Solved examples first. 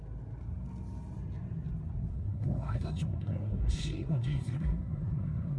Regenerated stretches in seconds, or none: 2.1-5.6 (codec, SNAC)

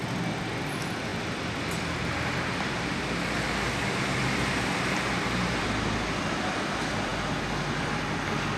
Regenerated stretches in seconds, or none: none

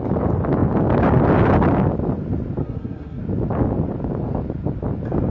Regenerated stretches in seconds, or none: 2.6-3.2 (codec, SNAC)

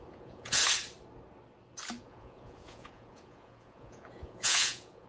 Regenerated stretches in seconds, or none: 0.0-0.6 (vocoder, Vocos); 2.0-5.1

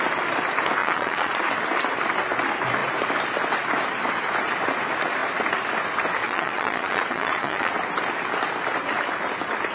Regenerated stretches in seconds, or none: 0.8-1.4 (vocoder, Vocos); 6.2-7.7